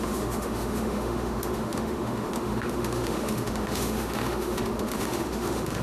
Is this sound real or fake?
fake